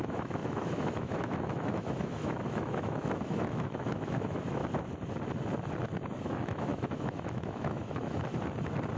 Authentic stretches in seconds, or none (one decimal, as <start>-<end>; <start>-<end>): 4.6-6.1; 8.3-9.0